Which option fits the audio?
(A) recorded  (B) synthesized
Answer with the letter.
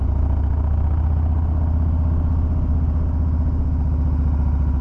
A